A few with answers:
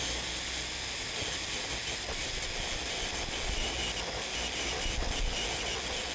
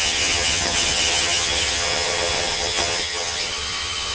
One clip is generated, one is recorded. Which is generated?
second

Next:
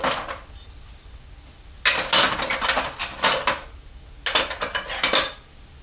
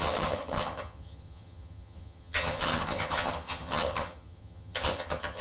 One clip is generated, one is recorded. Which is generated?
second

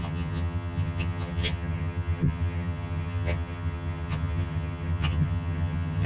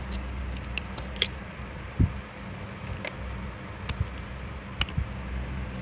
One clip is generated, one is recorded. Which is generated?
first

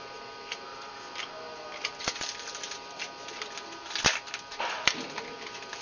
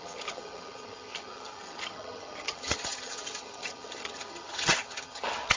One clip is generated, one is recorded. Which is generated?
second